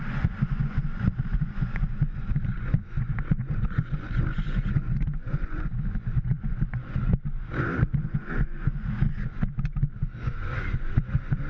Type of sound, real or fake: fake